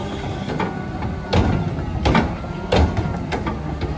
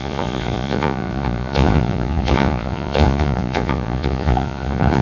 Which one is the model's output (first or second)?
second